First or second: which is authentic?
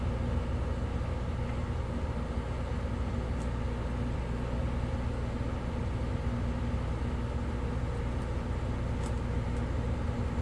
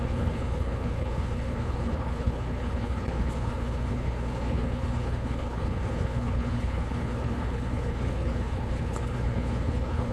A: first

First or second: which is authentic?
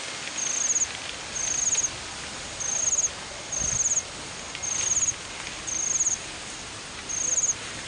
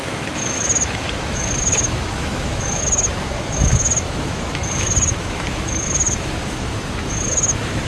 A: first